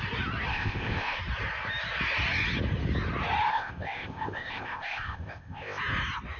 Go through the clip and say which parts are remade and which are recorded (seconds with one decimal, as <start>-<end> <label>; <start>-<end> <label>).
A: 0.0-0.5 recorded; 0.5-1.2 remade; 1.2-3.5 recorded; 3.5-5.8 remade; 5.8-6.4 recorded